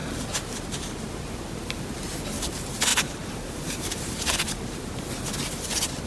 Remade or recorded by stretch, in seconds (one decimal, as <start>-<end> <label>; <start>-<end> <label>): 0.0-2.9 recorded; 2.9-4.9 remade; 4.9-6.1 recorded